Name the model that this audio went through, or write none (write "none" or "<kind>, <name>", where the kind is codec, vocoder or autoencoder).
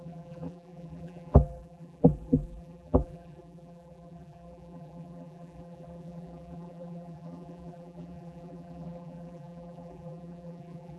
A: vocoder, BigVGAN v2